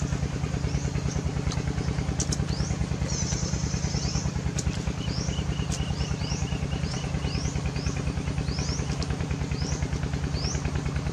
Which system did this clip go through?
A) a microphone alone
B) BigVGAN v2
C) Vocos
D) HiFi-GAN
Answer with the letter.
B